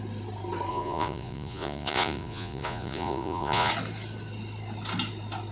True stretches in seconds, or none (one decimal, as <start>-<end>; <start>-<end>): 0.0-0.7; 3.7-5.5